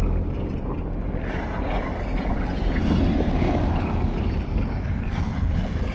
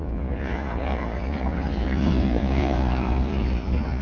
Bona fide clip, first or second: first